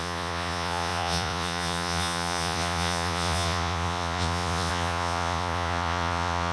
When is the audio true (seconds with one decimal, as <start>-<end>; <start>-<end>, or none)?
none